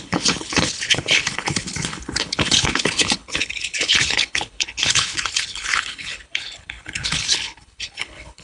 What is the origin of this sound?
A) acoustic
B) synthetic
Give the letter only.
B